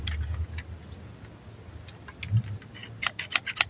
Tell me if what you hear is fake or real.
real